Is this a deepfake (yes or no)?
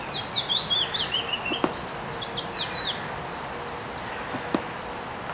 no